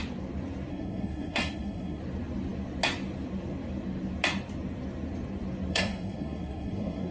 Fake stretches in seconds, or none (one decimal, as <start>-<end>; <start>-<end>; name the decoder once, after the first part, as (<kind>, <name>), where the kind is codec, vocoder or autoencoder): 0.7-2.0 (codec, SNAC); 5.7-7.1